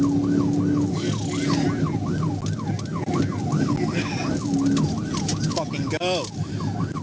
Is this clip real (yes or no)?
yes